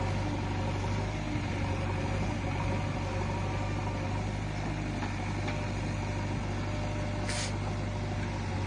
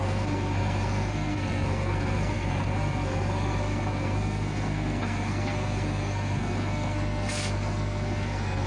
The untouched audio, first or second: first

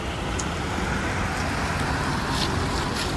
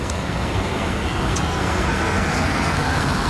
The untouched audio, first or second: first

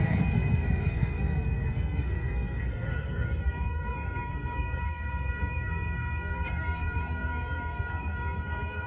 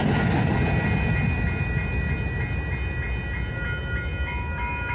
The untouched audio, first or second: second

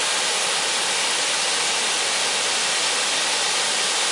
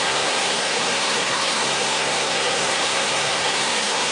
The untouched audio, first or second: first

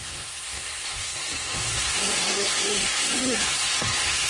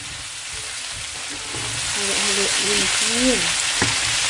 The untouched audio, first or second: second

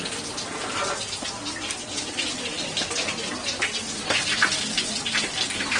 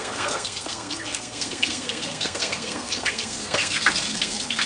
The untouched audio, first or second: first